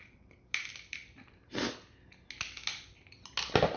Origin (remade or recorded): recorded